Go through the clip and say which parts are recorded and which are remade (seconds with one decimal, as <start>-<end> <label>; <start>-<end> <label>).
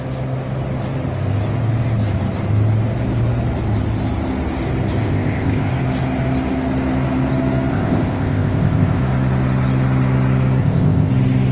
0.0-5.0 recorded; 5.0-5.7 remade; 5.7-7.7 recorded; 7.7-9.0 remade; 9.0-10.6 recorded; 10.6-11.1 remade; 11.1-11.5 recorded